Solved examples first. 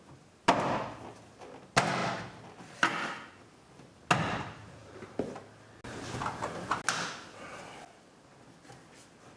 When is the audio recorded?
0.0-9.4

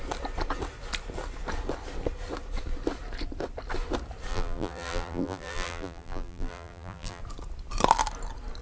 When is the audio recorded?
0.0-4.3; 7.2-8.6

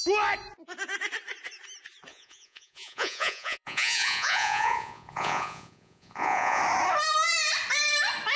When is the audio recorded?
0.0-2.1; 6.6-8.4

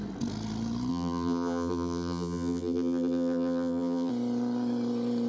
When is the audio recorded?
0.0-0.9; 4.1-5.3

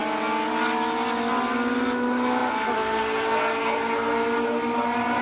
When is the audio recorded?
0.0-5.2

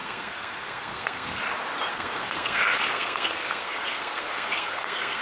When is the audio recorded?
1.4-1.9

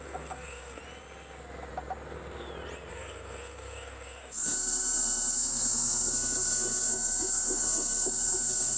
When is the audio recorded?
0.8-2.9